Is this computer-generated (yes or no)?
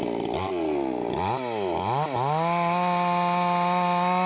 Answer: no